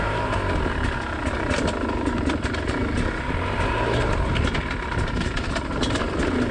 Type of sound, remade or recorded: recorded